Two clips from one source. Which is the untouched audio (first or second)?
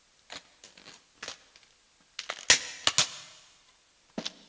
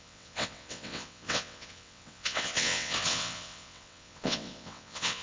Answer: first